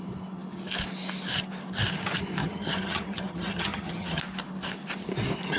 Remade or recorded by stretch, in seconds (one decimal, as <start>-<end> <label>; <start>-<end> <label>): 0.0-2.4 recorded; 2.4-4.2 remade; 4.2-5.6 recorded